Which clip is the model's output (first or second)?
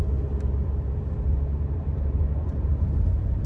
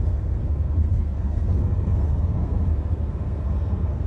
second